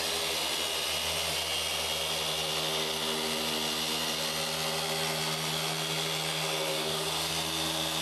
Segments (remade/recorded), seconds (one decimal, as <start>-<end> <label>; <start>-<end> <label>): 0.0-6.7 recorded; 6.7-7.3 remade; 7.3-8.0 recorded